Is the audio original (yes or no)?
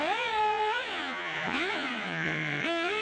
no